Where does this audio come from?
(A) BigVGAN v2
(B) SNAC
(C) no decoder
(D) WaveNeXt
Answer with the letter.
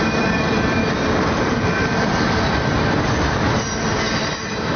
A